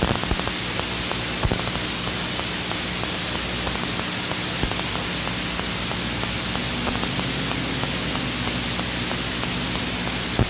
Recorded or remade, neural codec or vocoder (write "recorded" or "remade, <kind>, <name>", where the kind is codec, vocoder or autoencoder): recorded